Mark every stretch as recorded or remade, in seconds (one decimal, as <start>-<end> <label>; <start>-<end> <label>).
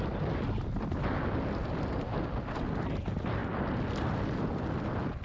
0.0-5.2 recorded